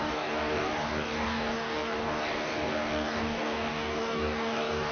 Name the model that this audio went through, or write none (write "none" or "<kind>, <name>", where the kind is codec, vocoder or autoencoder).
codec, DAC